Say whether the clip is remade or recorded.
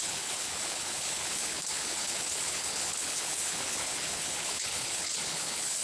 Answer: remade